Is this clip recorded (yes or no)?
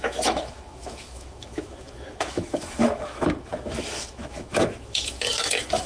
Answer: no